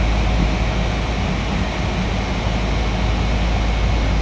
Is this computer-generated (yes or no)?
no